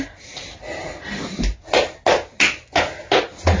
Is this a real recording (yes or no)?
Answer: yes